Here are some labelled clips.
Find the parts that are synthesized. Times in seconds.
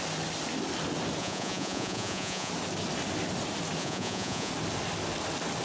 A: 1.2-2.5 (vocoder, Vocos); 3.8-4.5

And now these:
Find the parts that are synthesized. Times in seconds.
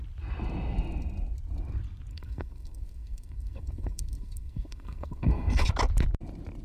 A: 2.1-5.7 (codec, SNAC)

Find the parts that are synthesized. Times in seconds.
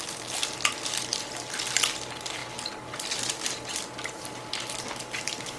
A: none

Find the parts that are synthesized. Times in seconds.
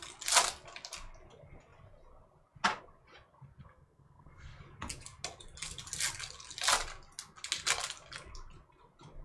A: 3.6-4.6 (codec, SNAC)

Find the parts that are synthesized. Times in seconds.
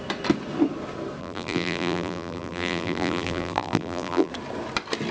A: 1.2-4.3 (vocoder, BigVGAN v2)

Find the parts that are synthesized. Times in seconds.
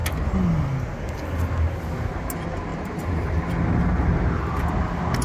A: 2.7-3.5 (vocoder, BigVGAN v2)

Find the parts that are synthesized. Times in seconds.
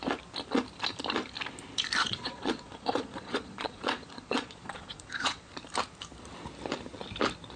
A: 2.0-5.5 (vocoder, Vocos)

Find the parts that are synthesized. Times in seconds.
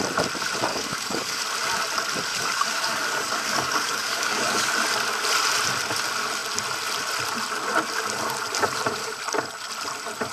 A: 0.7-1.4 (codec, DAC); 2.3-4.7